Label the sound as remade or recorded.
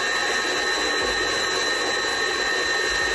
recorded